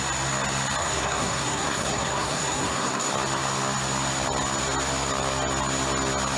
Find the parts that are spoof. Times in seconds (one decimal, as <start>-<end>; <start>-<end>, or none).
0.8-3.1